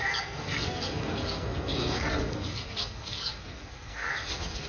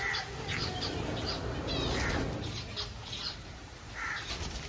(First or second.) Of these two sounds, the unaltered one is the second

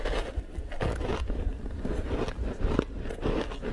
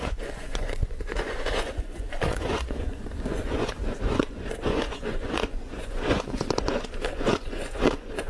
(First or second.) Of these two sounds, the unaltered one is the first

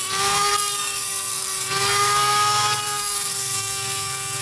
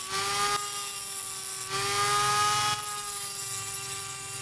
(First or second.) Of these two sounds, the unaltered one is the second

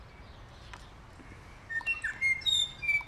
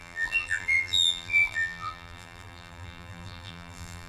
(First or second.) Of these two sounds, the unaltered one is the first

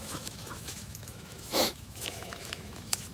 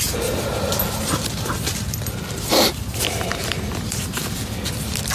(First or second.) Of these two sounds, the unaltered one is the second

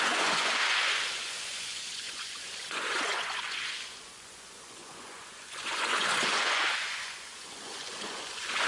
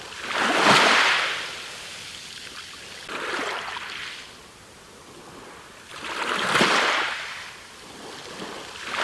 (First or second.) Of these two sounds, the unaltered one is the second